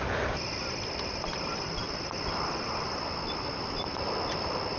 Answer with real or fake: real